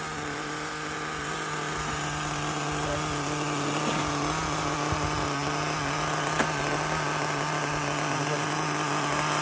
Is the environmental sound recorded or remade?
recorded